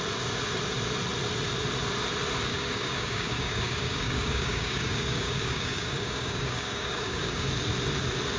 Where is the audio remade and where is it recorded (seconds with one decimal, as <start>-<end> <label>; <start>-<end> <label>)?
0.0-2.5 recorded; 2.5-7.5 remade; 7.5-8.4 recorded